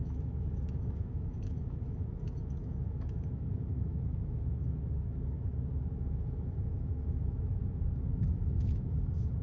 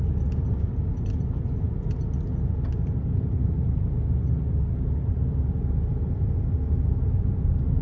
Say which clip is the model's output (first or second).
first